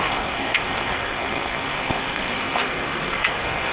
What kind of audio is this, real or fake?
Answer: fake